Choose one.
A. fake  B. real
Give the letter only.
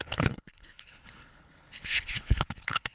A